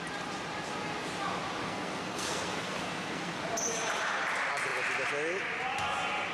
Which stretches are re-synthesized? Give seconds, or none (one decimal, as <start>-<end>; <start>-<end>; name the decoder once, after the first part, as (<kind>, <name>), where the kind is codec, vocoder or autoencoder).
1.6-3.4 (codec, SNAC)